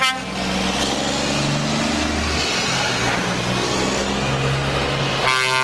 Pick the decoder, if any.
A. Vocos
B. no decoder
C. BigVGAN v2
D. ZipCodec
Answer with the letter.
B